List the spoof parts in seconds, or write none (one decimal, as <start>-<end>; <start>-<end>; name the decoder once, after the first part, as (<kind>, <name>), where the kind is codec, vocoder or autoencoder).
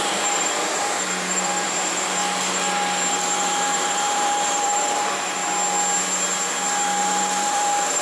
0.0-2.2 (vocoder, BigVGAN v2); 3.1-5.4; 7.0-8.0